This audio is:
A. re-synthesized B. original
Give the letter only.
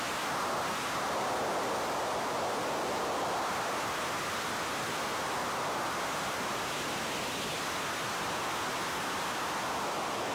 B